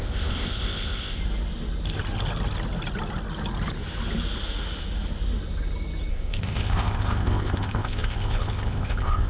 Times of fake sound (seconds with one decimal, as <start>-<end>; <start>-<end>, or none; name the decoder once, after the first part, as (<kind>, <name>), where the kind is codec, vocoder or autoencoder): 0.0-1.2 (codec, ZipCodec); 6.1-9.3